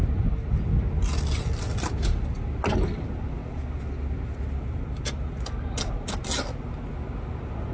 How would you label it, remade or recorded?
recorded